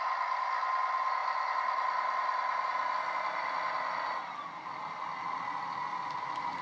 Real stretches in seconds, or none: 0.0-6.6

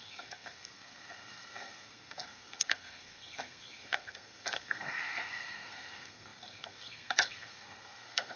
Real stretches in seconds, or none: none

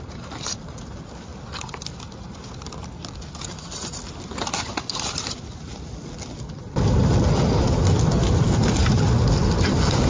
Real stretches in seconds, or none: 0.0-10.1

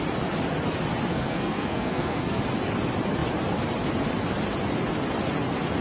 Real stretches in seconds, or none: 0.0-1.1; 2.4-5.8

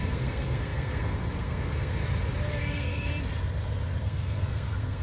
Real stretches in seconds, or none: 2.0-2.6; 3.1-4.0

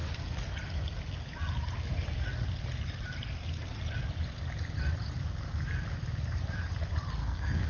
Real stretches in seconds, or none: 0.0-7.2

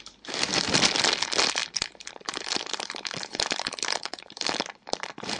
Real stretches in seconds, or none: 0.0-5.4

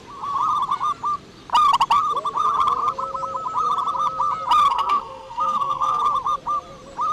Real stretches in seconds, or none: 0.0-4.7; 6.0-7.1